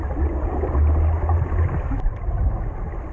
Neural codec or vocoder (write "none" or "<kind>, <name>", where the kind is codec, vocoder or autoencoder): none